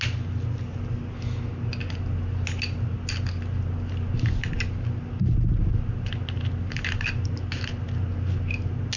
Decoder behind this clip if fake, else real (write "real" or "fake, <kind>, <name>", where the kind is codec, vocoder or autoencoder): real